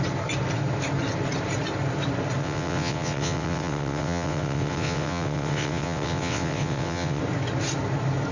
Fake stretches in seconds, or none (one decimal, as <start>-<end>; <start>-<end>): 2.4-7.2